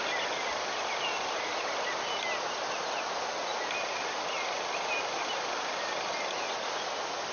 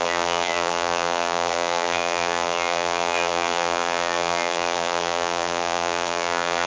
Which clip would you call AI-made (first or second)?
second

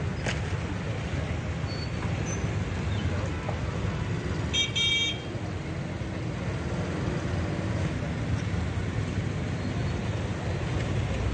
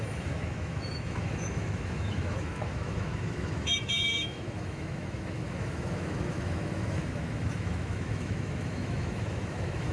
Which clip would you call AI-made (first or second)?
second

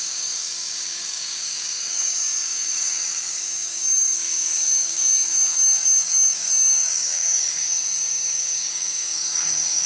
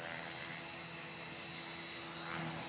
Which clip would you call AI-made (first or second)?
first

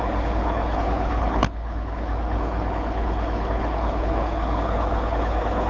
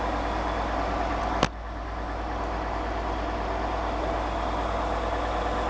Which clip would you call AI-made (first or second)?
first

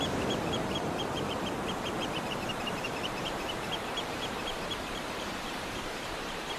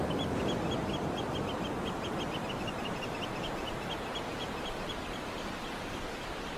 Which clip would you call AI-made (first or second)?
first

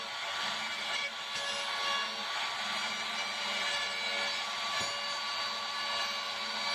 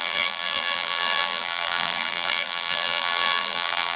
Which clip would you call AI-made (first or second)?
second